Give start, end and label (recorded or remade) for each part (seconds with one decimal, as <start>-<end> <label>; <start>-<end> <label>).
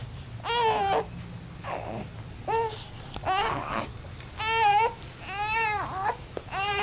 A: 0.0-3.2 recorded; 3.2-4.4 remade; 4.4-6.8 recorded